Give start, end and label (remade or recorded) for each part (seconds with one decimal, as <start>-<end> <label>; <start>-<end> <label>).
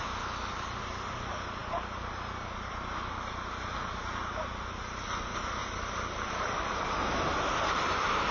0.0-5.6 recorded; 5.6-7.8 remade; 7.8-8.3 recorded